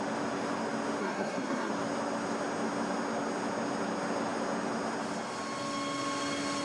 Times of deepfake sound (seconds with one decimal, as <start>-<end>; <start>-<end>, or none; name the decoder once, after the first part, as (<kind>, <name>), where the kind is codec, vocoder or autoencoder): 1.0-1.7 (codec, SNAC)